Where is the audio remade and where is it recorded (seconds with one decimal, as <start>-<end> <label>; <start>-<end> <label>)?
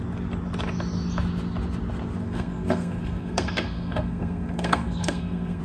0.0-2.2 recorded; 2.2-5.6 remade